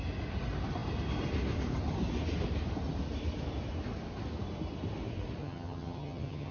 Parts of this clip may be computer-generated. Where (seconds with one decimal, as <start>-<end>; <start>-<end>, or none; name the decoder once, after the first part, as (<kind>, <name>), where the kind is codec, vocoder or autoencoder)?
5.4-6.5 (vocoder, HiFi-GAN)